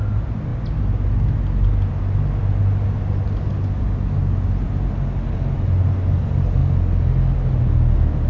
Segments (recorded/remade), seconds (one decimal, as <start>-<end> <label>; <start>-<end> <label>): 0.0-8.3 recorded